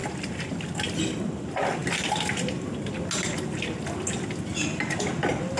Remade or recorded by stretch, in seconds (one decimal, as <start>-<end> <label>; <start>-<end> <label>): 0.0-5.6 recorded